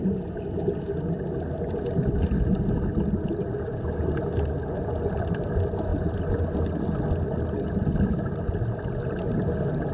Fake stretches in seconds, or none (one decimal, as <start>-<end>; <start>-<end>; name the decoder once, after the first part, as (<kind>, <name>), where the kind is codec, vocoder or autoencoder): none